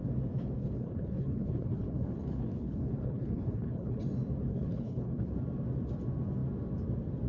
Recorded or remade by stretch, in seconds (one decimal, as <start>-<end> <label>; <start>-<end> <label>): 0.0-0.6 recorded; 0.6-4.0 remade; 4.0-4.5 recorded; 4.5-5.3 remade; 5.3-7.3 recorded